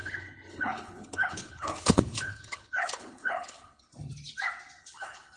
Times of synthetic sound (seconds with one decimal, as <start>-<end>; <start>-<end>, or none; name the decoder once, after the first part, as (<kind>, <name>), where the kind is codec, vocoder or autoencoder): 0.0-3.9 (codec, HILCodec); 4.8-5.4